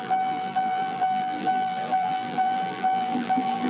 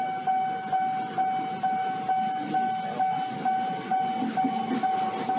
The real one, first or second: second